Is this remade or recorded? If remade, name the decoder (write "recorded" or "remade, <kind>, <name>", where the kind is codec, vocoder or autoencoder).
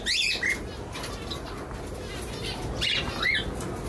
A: recorded